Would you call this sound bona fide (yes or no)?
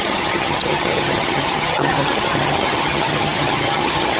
no